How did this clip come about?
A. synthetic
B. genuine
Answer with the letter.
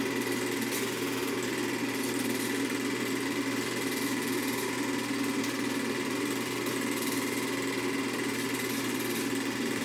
B